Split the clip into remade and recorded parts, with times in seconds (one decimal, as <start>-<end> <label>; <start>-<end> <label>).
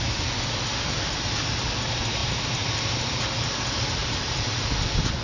0.0-2.2 recorded; 2.2-3.1 remade; 3.1-4.0 recorded; 4.0-4.6 remade; 4.6-5.2 recorded